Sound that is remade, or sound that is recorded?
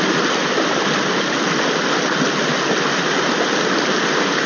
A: recorded